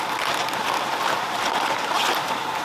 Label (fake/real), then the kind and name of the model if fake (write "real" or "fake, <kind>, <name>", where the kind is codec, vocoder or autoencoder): real